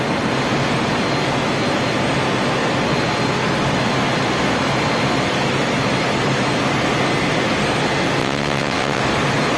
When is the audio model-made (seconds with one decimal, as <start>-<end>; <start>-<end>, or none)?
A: 8.2-9.0